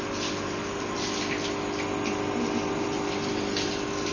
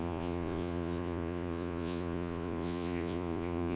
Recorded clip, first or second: first